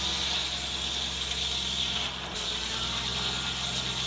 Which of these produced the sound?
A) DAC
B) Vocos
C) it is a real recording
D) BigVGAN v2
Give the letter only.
C